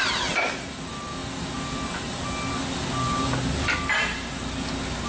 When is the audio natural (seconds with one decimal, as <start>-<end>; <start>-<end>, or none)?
0.0-5.1